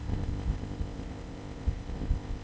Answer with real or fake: fake